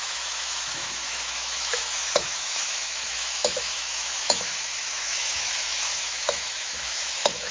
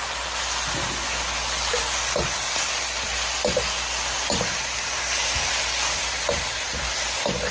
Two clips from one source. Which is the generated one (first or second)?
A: first